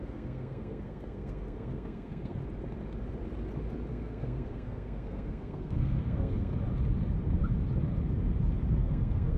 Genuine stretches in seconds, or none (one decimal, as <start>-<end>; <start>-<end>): 2.4-3.9; 6.5-8.8